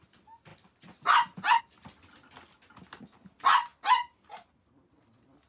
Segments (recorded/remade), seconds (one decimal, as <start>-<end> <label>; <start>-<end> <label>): 0.0-5.5 recorded